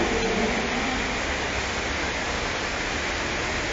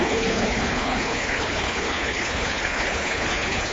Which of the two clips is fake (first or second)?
second